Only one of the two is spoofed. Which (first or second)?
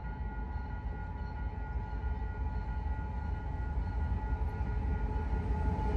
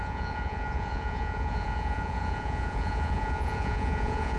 second